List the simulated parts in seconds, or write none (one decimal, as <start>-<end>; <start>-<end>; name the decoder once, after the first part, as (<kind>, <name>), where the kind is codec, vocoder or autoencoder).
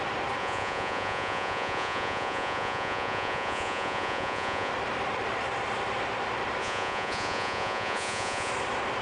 0.4-4.7 (vocoder, Vocos); 6.6-8.5